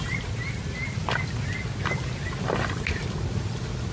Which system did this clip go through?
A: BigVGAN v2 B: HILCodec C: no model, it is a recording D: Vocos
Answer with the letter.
C